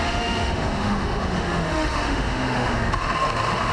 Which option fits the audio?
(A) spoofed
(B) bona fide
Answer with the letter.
A